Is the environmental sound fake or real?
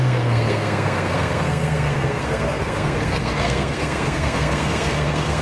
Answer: fake